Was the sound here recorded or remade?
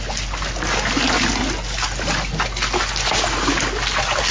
recorded